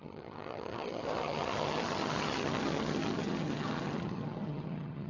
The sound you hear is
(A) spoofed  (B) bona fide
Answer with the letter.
A